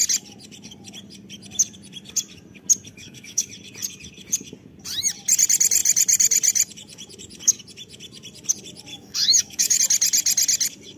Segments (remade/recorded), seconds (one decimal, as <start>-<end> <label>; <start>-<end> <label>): 0.0-2.9 recorded; 2.9-3.5 remade; 3.5-8.9 recorded; 8.9-9.8 remade; 9.8-11.0 recorded